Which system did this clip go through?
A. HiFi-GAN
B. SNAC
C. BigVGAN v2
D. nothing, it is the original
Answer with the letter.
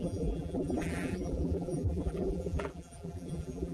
C